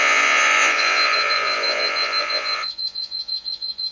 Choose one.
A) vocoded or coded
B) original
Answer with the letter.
A